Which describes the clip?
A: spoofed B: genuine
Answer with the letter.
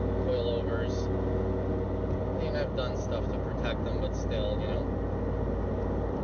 B